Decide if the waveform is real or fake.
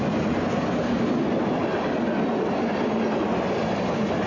real